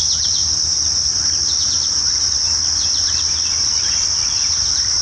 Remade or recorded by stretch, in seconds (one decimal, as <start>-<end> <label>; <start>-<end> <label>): 0.0-5.0 recorded